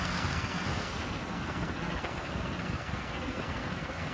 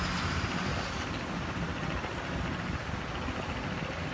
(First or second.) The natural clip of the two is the second